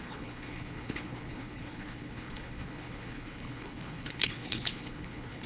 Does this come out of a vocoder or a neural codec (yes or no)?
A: yes